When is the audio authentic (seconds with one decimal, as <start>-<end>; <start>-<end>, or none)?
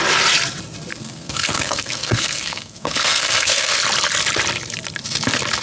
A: 0.0-0.9; 3.7-5.6